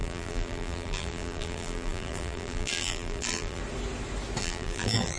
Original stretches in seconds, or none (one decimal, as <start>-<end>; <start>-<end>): 3.6-4.4